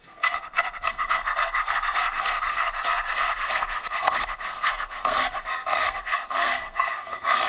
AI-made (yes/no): yes